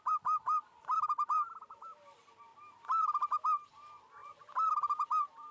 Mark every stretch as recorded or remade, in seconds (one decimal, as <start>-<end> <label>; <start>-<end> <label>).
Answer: 0.0-2.5 remade; 2.5-3.7 recorded; 3.7-4.2 remade; 4.2-4.9 recorded; 4.9-5.5 remade